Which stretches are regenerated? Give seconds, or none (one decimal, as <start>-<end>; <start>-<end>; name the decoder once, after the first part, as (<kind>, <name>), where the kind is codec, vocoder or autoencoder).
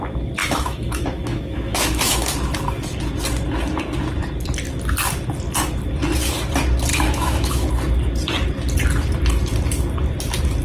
0.4-2.3 (autoencoder, DAC-VAE); 6.9-7.7